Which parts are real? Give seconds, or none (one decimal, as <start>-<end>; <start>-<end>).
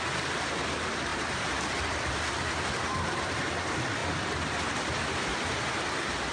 0.0-6.3